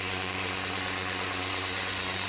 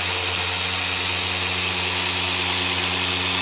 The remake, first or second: first